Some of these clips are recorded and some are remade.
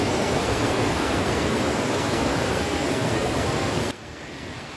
remade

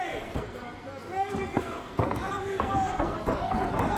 remade